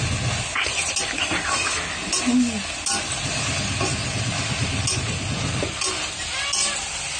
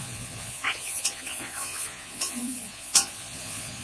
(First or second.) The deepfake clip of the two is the second